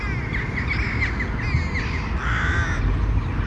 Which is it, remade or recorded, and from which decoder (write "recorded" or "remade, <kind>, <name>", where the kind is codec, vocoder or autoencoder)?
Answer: recorded